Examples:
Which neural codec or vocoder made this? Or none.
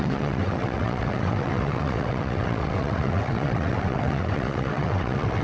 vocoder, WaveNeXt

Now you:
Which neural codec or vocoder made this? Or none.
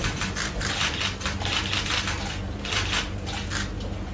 none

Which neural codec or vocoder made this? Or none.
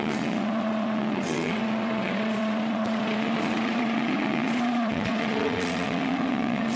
vocoder, WaveNeXt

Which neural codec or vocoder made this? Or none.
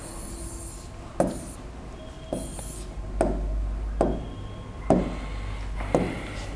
none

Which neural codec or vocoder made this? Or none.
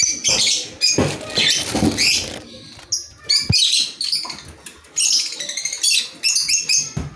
none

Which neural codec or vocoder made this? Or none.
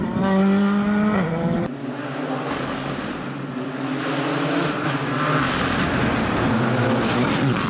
none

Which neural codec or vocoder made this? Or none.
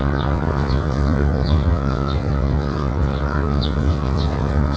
vocoder, WaveNeXt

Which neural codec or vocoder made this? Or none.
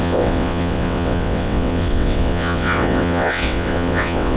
vocoder, WaveNeXt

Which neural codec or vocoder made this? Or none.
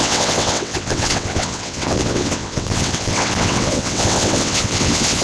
vocoder, WaveNeXt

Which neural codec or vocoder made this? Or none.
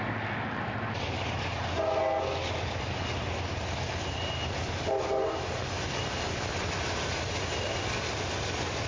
none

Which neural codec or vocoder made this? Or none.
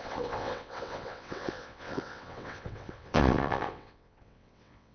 vocoder, WaveNeXt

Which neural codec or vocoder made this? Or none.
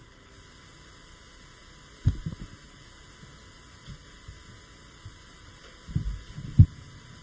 none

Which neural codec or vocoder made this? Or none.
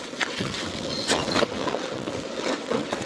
vocoder, WaveNeXt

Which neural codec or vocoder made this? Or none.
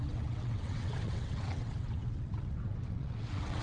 vocoder, WaveNeXt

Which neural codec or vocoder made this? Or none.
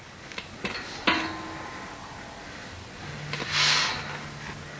none